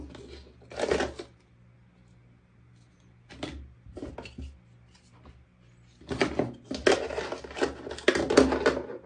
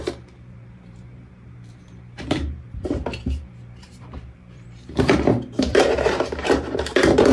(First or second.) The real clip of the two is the first